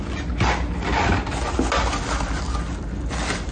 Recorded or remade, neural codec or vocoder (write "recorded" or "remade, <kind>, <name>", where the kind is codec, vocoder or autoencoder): recorded